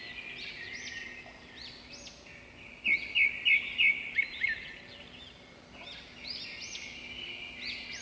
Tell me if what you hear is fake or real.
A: real